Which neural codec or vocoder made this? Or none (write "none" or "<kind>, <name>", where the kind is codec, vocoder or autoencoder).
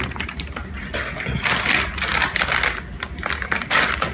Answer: none